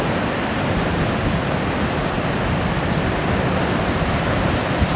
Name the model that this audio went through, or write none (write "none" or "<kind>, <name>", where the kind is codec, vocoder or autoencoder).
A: none